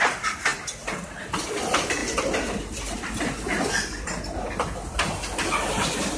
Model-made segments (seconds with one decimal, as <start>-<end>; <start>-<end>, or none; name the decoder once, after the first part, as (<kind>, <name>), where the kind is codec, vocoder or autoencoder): 0.0-0.5 (vocoder, BigVGAN v2); 1.2-6.2

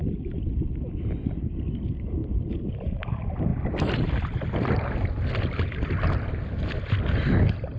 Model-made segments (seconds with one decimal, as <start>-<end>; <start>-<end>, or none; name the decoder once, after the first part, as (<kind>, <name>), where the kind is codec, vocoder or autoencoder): 2.2-3.1 (vocoder, BigVGAN v2)

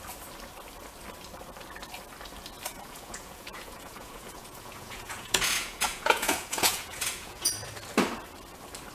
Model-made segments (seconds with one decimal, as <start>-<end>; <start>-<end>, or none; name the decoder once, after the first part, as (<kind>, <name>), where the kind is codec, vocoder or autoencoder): 2.7-7.5 (vocoder, Vocos)

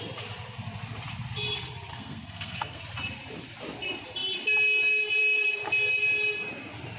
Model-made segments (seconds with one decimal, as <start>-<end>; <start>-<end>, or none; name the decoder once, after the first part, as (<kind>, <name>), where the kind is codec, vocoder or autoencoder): 1.9-2.8 (codec, SNAC)

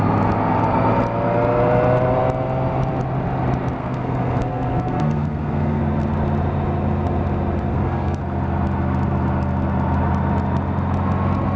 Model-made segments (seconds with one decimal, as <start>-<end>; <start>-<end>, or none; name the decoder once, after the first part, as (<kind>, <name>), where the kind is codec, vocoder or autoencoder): 3.8-5.8 (codec, SNAC); 7.7-8.2

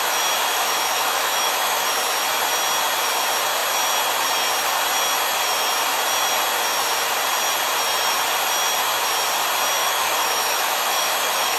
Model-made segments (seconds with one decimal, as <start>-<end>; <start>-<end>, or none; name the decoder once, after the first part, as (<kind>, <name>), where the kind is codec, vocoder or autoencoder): 0.4-1.8 (autoencoder, DAC-VAE); 9.8-11.6